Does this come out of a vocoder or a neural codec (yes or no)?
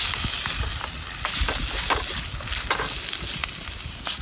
no